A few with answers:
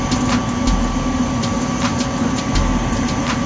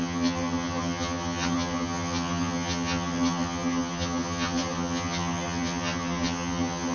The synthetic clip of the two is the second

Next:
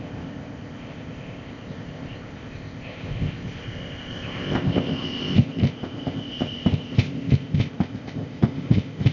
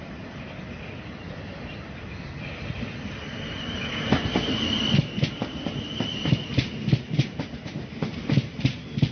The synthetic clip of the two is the first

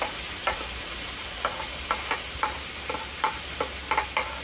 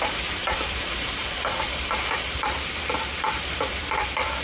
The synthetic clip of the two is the second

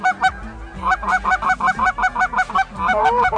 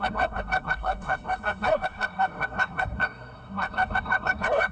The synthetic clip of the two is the second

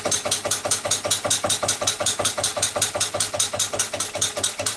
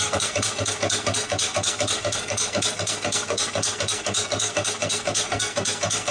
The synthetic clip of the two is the second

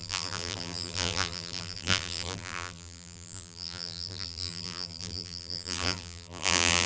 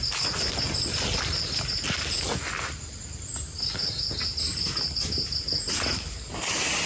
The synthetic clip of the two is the first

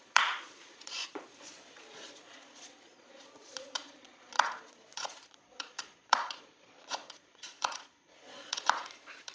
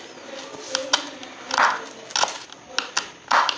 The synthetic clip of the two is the first